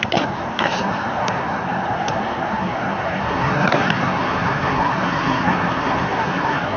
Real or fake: fake